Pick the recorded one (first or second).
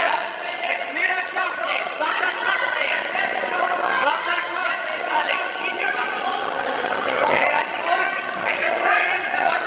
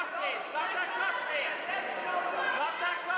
second